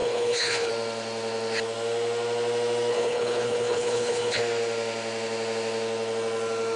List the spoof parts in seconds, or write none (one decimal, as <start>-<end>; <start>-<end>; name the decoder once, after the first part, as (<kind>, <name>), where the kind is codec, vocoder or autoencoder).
0.0-0.7 (codec, HILCodec); 2.9-4.4